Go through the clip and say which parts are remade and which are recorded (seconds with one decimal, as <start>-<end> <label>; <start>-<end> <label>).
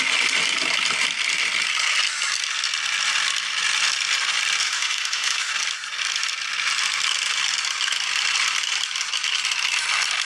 0.0-4.6 recorded; 4.6-5.5 remade; 5.5-10.2 recorded